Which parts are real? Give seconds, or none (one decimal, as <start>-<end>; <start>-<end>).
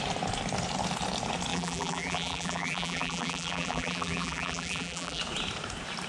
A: 0.0-1.5; 5.2-6.1